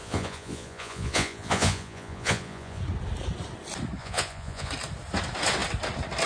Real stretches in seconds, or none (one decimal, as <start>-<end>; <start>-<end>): 2.8-4.0; 4.7-6.3